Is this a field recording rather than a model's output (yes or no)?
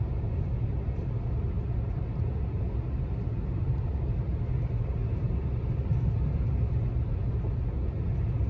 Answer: yes